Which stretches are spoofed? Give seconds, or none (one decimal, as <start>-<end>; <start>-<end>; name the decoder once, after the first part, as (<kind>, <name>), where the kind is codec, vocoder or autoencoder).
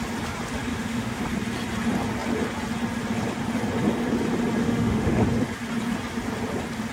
0.7-1.2 (autoencoder, DAC-VAE); 4.6-5.2